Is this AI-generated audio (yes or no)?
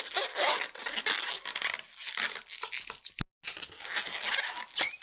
no